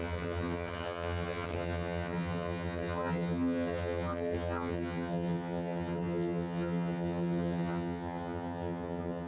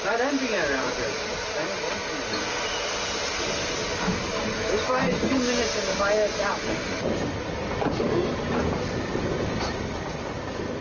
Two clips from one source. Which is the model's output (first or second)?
first